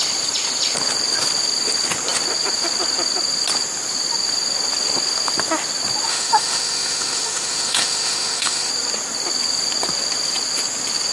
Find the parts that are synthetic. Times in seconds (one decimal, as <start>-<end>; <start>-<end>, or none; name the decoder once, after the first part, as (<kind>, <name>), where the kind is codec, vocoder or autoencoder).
6.1-8.7 (autoencoder, DAC-VAE)